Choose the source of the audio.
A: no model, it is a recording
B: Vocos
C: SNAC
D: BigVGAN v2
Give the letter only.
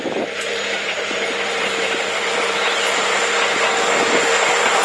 D